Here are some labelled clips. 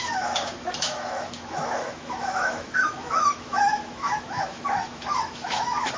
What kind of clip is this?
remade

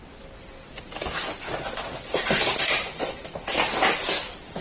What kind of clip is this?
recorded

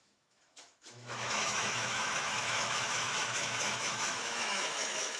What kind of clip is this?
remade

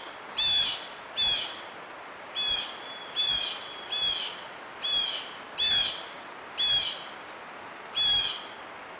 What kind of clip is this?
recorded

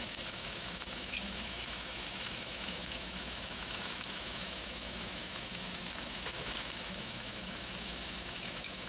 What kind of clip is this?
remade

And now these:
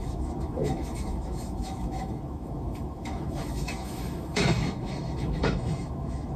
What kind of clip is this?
remade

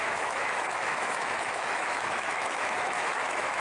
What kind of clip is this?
remade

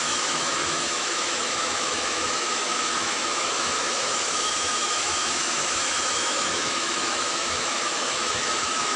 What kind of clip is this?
remade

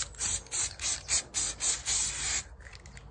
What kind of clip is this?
recorded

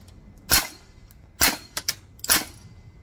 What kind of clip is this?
recorded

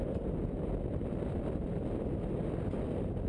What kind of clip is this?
recorded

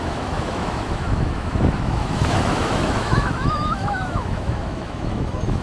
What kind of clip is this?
remade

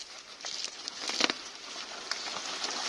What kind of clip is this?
recorded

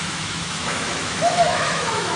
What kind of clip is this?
remade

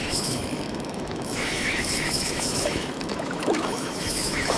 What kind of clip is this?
remade